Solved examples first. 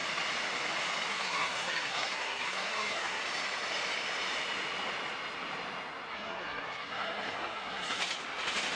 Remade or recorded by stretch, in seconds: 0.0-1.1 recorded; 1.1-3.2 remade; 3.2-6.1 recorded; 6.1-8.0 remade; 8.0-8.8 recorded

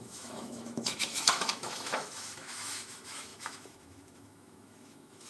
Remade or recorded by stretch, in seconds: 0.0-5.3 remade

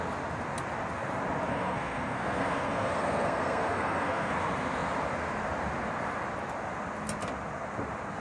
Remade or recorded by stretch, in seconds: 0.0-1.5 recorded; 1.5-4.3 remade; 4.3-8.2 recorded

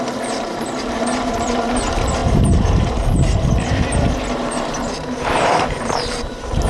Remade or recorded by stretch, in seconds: 0.0-6.7 remade

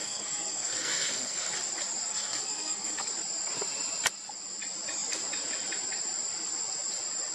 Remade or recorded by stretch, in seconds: 0.0-1.5 remade; 1.5-2.1 recorded; 2.1-3.1 remade; 3.1-7.3 recorded

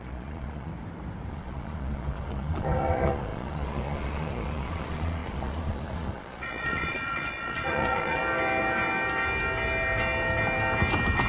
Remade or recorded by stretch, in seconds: 0.0-0.7 remade; 0.7-1.3 recorded; 1.3-8.2 remade; 8.2-11.3 recorded